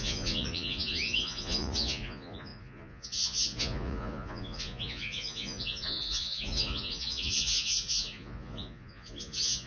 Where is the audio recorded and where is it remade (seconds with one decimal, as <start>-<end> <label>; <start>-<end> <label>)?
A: 0.0-9.7 remade